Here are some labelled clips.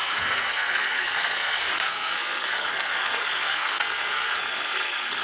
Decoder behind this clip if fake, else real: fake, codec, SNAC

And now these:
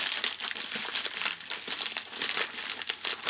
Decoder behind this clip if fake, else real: real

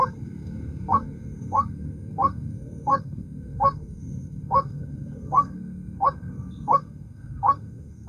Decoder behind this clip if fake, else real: fake, codec, SNAC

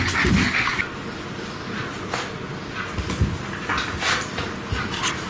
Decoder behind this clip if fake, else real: real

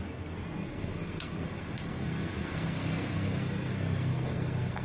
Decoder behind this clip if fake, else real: fake, codec, SNAC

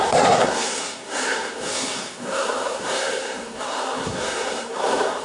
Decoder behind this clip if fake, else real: fake, codec, SNAC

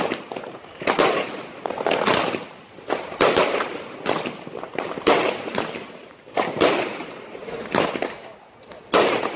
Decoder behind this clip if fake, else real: real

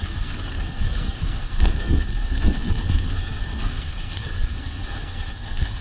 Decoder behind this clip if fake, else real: fake, codec, SNAC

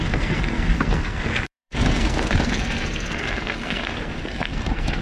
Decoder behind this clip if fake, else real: fake, codec, SNAC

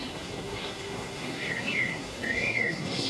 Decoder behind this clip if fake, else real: fake, codec, SNAC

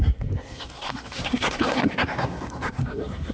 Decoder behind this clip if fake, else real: fake, codec, SNAC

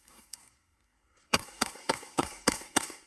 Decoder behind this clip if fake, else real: fake, codec, SNAC